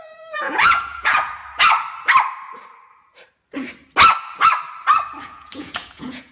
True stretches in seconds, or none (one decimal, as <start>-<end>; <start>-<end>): 1.4-5.2